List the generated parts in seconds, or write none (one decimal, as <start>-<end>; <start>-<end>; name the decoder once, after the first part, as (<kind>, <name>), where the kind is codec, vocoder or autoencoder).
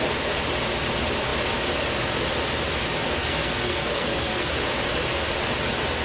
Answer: 3.2-4.5 (codec, SNAC)